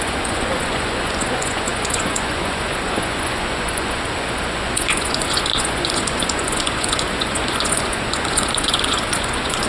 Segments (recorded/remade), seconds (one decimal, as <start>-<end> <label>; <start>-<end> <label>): 0.0-9.7 remade

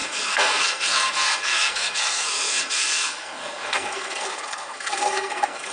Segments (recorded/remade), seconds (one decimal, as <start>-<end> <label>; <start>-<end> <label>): 0.0-5.7 remade

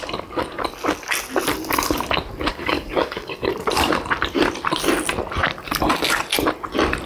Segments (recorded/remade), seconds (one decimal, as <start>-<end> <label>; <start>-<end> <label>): 0.0-2.5 recorded; 2.5-3.5 remade; 3.5-7.1 recorded

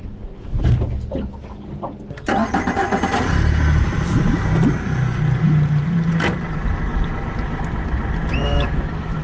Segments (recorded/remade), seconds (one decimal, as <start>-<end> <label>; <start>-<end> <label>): 0.0-8.4 recorded; 8.4-9.2 remade

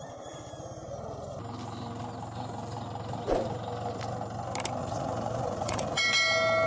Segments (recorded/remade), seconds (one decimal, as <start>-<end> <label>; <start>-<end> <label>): 0.0-4.8 recorded; 4.8-6.0 remade; 6.0-6.7 recorded

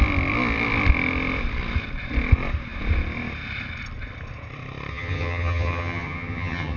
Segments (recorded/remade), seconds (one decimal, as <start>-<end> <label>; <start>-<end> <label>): 0.0-4.9 recorded; 4.9-6.8 remade

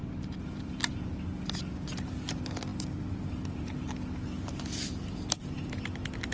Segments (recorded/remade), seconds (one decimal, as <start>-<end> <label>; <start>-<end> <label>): 0.0-6.3 recorded